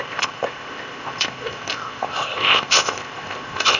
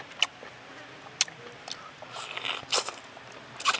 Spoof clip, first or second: first